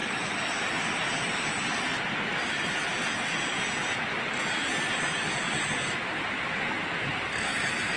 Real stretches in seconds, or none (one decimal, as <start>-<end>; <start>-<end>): 0.0-8.0